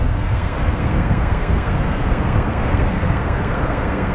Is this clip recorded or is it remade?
remade